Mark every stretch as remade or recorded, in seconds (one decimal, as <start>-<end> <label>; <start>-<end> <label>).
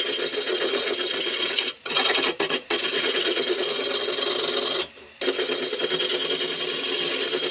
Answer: 0.0-0.5 recorded; 0.5-3.8 remade; 3.8-7.5 recorded